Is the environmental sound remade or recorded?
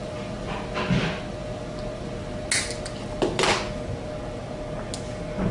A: recorded